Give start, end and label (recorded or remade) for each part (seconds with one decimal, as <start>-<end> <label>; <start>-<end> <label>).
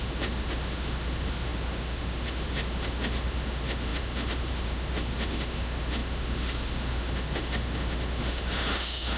0.0-9.2 remade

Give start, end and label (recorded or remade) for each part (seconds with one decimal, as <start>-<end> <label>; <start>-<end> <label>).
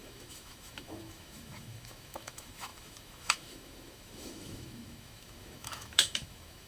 0.0-6.7 remade